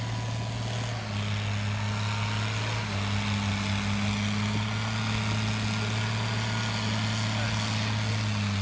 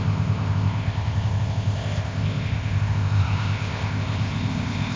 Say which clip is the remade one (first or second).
second